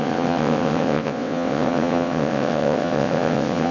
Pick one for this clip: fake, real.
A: fake